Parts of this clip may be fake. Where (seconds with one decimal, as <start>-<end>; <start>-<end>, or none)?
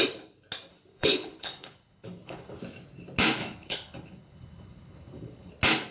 0.7-2.6; 3.4-5.5